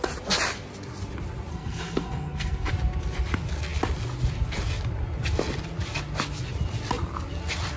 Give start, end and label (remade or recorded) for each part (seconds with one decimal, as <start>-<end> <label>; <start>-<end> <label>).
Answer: 0.0-1.5 recorded; 1.5-2.7 remade; 2.7-7.8 recorded